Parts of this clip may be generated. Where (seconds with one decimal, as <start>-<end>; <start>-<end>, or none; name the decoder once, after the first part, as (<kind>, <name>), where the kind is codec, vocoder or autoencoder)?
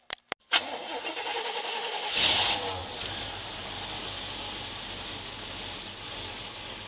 1.4-2.1 (autoencoder, DAC-VAE)